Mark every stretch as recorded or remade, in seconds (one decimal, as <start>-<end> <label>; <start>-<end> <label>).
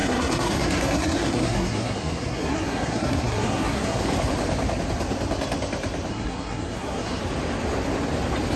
0.0-4.0 remade; 4.0-6.1 recorded; 6.1-7.2 remade; 7.2-8.6 recorded